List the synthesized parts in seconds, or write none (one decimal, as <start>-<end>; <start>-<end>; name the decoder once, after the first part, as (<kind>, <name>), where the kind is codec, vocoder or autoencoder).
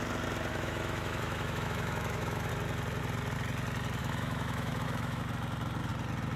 0.5-2.5 (autoencoder, DAC-VAE); 4.0-5.2